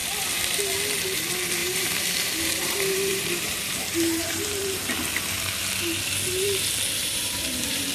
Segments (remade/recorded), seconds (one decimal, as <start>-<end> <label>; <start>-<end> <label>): 0.0-1.6 recorded; 1.6-4.9 remade; 4.9-7.0 recorded; 7.0-7.9 remade